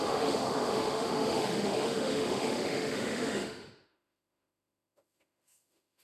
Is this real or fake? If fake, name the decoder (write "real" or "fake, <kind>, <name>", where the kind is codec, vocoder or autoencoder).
fake, autoencoder, DAC-VAE